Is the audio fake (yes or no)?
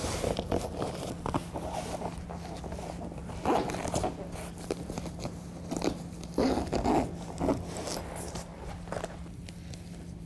no